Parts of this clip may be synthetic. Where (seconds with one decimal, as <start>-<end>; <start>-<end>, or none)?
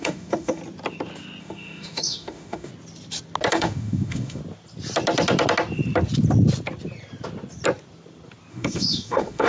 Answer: 0.0-0.6; 1.4-2.7; 3.5-4.4; 8.5-9.5